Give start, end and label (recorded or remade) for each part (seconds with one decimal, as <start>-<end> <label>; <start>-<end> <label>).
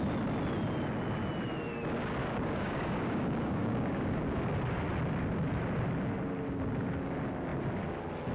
0.0-2.2 recorded; 2.2-4.5 remade; 4.5-8.3 recorded